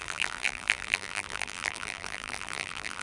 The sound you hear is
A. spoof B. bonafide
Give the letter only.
A